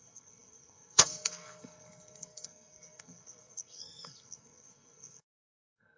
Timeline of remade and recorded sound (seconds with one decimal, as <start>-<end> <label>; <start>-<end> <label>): 0.0-6.0 remade